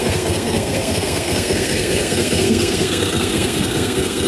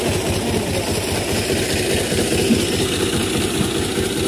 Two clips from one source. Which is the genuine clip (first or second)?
second